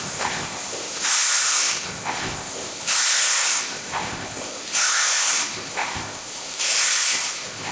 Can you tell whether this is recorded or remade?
remade